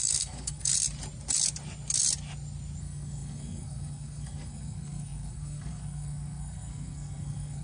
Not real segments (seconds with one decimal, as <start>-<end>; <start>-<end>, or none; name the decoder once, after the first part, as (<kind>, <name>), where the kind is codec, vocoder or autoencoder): 0.0-0.7 (codec, SNAC); 2.8-7.6